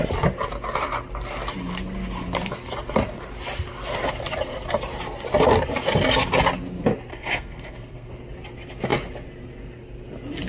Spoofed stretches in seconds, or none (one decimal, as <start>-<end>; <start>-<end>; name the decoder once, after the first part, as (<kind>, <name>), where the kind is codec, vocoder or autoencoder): 7.1-8.1 (codec, SNAC)